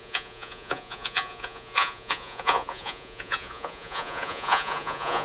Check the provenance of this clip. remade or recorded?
remade